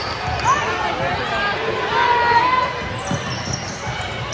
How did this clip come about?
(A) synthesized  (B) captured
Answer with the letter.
B